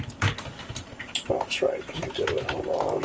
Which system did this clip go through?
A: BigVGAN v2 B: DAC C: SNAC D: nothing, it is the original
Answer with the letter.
D